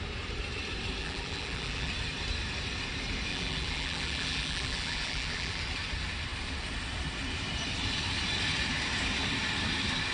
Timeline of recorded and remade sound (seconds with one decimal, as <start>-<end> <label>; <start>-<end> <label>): 0.0-1.0 recorded; 1.0-1.9 remade; 1.9-3.3 recorded; 3.3-5.6 remade; 5.6-10.1 recorded